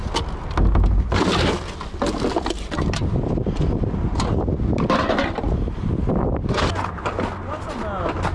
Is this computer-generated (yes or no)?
no